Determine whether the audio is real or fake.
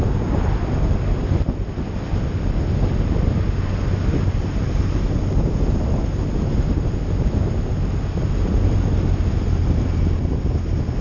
real